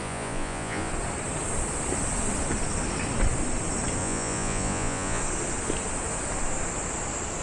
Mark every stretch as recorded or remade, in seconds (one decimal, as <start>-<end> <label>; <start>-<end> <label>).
0.0-0.9 remade; 0.9-4.0 recorded; 4.0-5.2 remade; 5.2-7.4 recorded